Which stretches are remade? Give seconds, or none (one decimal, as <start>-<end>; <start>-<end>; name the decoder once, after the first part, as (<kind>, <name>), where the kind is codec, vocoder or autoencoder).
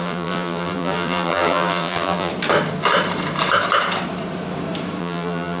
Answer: 0.0-2.3 (vocoder, BigVGAN v2); 5.0-5.6